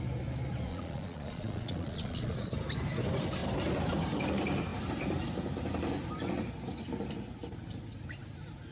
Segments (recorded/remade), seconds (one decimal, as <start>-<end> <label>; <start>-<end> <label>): 0.0-0.7 recorded; 0.7-2.5 remade; 2.5-8.7 recorded